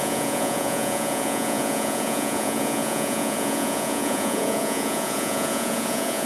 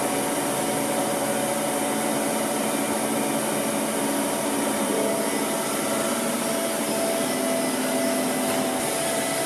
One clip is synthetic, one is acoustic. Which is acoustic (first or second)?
second